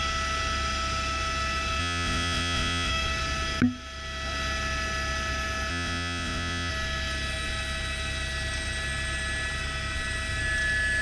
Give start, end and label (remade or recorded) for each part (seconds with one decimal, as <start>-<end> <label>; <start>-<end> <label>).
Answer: 0.0-1.8 recorded; 1.8-2.9 remade; 2.9-5.7 recorded; 5.7-6.7 remade; 6.7-11.0 recorded